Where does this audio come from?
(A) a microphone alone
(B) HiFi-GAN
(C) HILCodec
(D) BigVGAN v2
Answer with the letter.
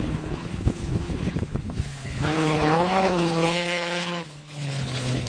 C